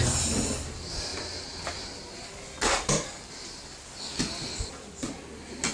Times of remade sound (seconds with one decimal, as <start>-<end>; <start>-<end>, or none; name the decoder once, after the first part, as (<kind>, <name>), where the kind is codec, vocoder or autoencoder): none